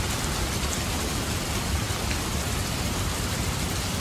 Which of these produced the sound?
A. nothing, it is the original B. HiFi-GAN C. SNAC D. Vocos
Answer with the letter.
A